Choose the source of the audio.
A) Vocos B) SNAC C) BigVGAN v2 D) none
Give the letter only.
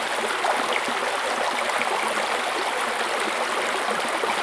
D